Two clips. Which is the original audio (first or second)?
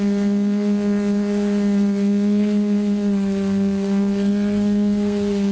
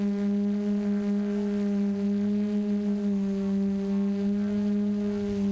second